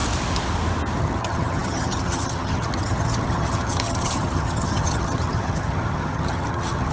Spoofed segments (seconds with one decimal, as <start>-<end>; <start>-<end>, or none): 1.0-6.9